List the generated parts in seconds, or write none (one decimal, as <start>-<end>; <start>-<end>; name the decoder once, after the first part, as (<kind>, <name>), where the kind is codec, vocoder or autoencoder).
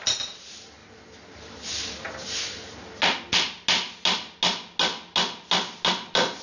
none